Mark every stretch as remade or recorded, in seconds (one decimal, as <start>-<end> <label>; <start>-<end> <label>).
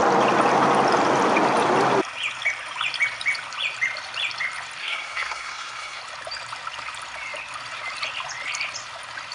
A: 0.0-4.8 recorded; 4.8-6.0 remade; 6.0-9.3 recorded